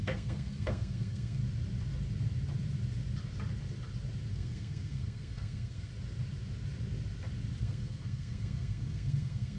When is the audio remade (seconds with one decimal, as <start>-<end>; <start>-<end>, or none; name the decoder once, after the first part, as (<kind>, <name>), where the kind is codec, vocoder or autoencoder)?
0.0-1.4 (codec, SNAC); 4.3-5.9; 7.6-9.6